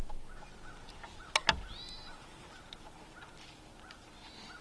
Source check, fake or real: real